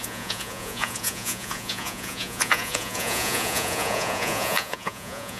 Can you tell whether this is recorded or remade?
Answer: remade